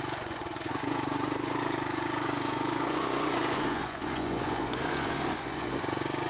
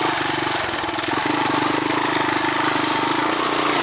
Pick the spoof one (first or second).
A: first